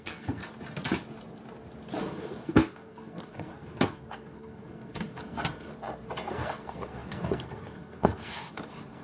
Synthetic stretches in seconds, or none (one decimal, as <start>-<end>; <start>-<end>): 0.0-0.4; 2.0-5.7; 6.3-9.0